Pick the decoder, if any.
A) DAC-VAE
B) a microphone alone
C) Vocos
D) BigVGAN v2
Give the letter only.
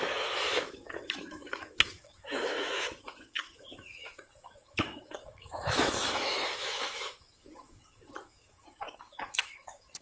A